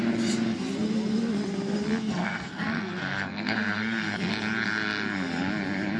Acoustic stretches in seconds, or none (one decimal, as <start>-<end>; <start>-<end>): 0.0-2.1; 4.3-6.0